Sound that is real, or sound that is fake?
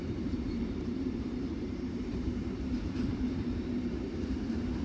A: fake